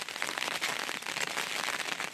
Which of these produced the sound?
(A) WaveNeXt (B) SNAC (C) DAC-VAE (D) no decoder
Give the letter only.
D